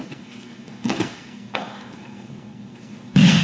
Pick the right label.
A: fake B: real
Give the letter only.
A